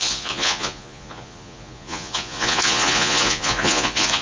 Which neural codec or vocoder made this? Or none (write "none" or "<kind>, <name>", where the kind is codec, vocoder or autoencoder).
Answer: vocoder, Vocos